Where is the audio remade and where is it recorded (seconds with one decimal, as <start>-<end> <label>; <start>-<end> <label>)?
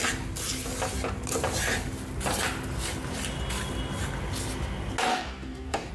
0.0-5.1 recorded; 5.1-5.9 remade